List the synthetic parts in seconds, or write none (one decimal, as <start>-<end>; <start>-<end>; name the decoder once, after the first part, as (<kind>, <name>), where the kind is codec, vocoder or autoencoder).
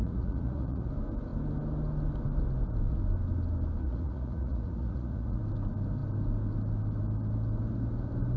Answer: 0.0-0.9 (vocoder, Vocos); 3.8-5.4